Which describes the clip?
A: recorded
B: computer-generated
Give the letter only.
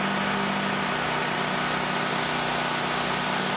A